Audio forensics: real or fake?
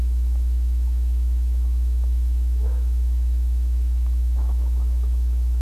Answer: fake